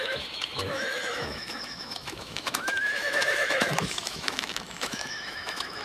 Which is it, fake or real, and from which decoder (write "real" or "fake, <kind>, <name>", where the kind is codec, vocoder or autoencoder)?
fake, autoencoder, DAC-VAE